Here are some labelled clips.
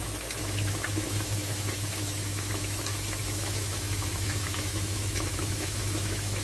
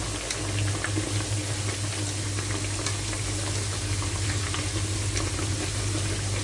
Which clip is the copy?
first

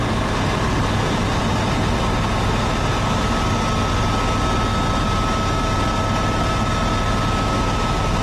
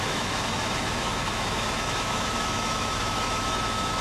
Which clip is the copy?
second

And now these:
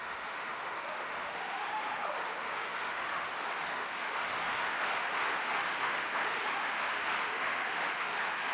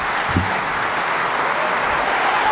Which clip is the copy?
first